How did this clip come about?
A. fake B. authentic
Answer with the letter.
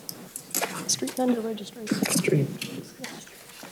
B